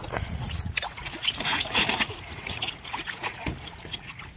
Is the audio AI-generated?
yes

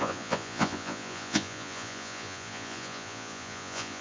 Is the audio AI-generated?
yes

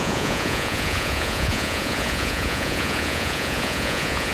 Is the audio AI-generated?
yes